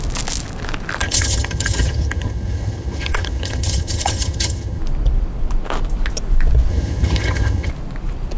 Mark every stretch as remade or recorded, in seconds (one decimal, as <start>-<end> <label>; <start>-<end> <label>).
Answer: 0.0-1.0 recorded; 1.0-4.8 remade; 4.8-6.7 recorded; 6.7-7.7 remade; 7.7-8.4 recorded